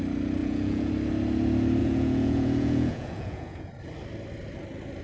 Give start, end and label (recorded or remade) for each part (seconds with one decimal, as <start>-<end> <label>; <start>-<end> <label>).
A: 0.0-0.4 recorded; 0.4-0.9 remade; 0.9-1.8 recorded; 1.8-3.7 remade; 3.7-5.0 recorded